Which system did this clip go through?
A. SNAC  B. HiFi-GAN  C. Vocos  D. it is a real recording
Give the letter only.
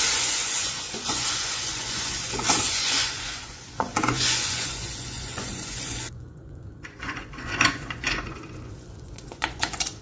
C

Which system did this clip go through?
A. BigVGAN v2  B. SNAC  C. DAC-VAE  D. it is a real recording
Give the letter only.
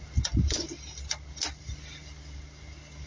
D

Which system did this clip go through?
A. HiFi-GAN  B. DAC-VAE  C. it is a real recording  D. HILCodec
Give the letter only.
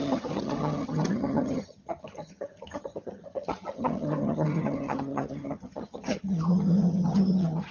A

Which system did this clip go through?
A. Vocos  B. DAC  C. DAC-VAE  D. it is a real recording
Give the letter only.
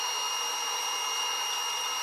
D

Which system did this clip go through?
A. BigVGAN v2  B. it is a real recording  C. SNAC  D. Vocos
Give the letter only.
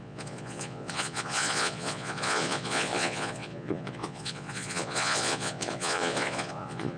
D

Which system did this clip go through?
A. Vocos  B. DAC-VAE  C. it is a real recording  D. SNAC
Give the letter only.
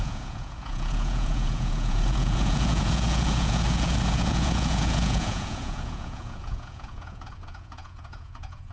A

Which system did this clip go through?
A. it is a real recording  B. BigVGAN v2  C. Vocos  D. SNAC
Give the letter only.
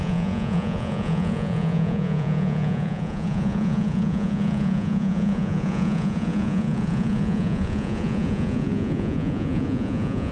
C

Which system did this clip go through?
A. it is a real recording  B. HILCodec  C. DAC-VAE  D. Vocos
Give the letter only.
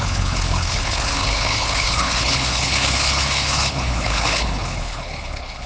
B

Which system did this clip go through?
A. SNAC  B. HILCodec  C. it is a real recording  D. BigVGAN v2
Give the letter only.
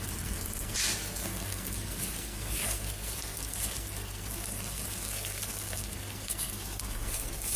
A